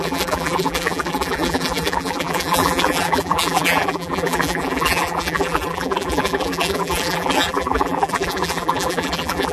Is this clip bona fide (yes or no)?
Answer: no